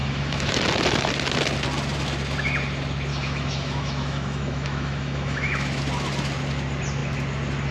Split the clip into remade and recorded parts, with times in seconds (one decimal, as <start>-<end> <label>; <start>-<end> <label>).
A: 0.0-0.6 remade; 0.6-3.1 recorded; 3.1-5.8 remade; 5.8-7.7 recorded